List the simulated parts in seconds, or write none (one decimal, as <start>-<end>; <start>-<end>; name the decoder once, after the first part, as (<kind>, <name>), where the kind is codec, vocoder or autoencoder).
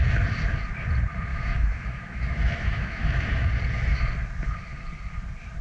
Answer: 1.3-3.5 (autoencoder, DAC-VAE)